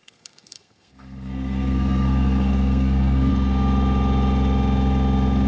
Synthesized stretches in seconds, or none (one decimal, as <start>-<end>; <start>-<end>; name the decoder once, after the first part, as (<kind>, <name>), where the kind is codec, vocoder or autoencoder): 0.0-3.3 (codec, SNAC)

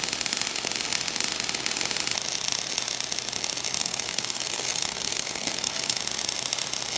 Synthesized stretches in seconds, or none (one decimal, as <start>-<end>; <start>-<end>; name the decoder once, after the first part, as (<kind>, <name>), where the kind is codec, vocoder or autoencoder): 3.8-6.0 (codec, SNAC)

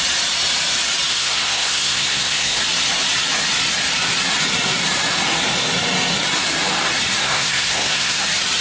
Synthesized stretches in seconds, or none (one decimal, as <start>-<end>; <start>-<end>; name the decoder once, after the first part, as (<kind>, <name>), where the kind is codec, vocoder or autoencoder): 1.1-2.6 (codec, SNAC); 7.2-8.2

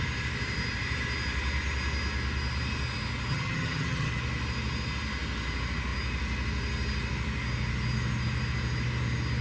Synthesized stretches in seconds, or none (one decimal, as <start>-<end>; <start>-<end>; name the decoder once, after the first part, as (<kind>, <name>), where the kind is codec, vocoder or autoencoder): 3.3-4.1 (vocoder, HiFi-GAN)

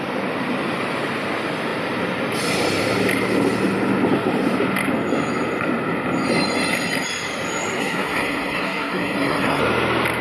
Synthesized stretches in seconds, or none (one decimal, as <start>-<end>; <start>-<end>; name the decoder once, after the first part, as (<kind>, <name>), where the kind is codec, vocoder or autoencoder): 7.8-9.6 (codec, SNAC)

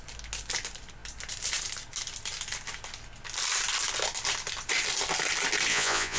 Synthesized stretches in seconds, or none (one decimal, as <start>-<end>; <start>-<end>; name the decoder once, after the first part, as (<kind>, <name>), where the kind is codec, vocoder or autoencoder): 5.7-6.2 (vocoder, Vocos)

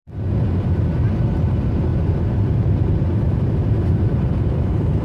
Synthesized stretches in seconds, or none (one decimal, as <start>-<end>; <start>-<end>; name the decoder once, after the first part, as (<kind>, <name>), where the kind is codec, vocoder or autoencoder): 1.9-5.0 (vocoder, BigVGAN v2)